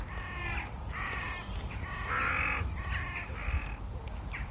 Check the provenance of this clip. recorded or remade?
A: recorded